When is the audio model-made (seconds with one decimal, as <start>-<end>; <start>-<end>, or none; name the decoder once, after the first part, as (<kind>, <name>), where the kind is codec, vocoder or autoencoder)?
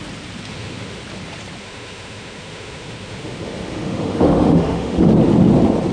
0.5-1.0 (autoencoder, DAC-VAE); 1.6-5.1